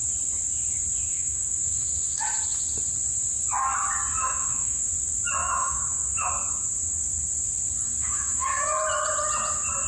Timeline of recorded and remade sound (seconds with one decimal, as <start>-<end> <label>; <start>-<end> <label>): 0.0-1.1 recorded; 1.1-2.2 remade; 2.2-4.2 recorded; 4.2-4.9 remade; 4.9-5.4 recorded; 5.4-6.3 remade; 6.3-8.0 recorded; 8.0-8.7 remade; 8.7-9.9 recorded